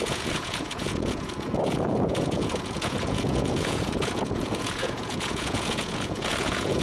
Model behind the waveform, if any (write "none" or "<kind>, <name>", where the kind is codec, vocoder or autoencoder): vocoder, Vocos